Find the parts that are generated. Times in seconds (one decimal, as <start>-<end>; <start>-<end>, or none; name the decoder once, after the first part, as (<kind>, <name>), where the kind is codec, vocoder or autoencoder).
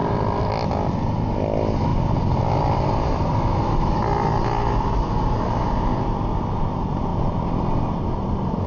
0.0-1.3 (vocoder, BigVGAN v2); 1.9-4.0; 5.9-6.6